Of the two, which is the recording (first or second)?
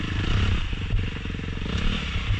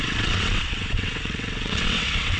first